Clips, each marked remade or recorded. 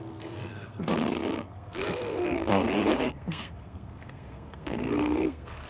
remade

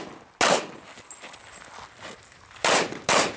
recorded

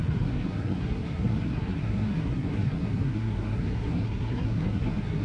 remade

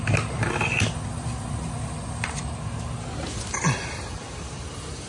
recorded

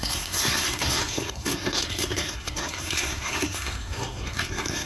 remade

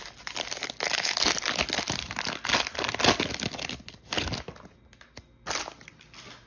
recorded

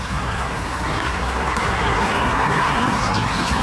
remade